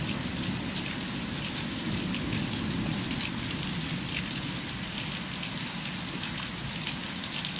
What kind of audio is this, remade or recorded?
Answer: recorded